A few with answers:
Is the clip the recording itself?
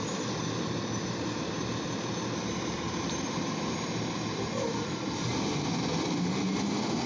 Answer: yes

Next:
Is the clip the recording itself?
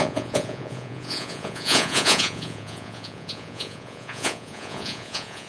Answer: no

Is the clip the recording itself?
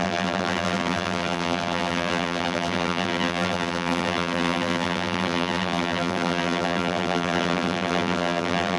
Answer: no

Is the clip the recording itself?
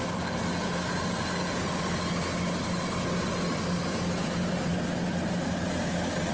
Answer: yes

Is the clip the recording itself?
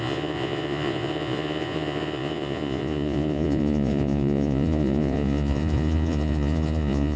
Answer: no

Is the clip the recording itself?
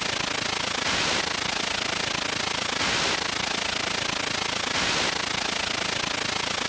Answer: yes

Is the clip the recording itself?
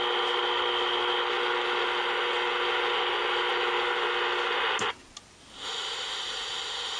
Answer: yes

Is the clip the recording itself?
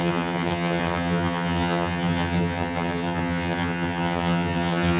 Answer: no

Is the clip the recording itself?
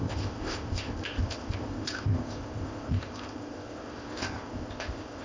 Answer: no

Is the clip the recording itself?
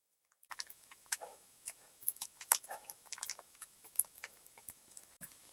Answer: no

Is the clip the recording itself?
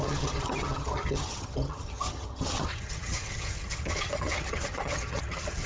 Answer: no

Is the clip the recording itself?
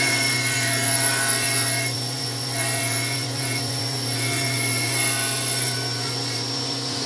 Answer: no